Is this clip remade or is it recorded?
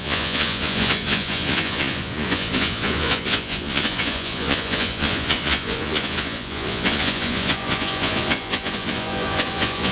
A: remade